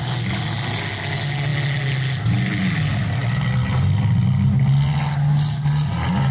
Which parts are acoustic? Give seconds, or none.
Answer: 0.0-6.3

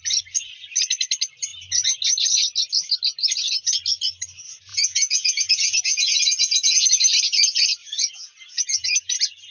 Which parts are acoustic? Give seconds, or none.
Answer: 0.0-4.7; 6.9-7.8; 9.1-9.5